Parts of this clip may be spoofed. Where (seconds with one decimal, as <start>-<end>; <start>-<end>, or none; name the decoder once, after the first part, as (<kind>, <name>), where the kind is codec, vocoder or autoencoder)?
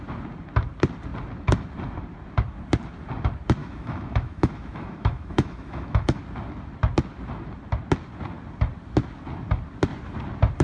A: 3.6-6.2 (autoencoder, DAC-VAE)